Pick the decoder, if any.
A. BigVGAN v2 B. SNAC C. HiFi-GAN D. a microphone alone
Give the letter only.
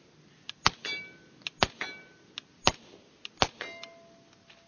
D